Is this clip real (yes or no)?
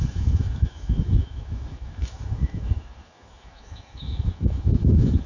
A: no